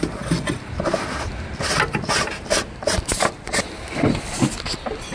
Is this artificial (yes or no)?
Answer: no